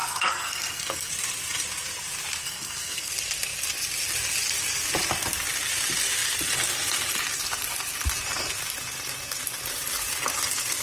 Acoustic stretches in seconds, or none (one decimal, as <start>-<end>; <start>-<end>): 1.1-2.4; 3.1-10.8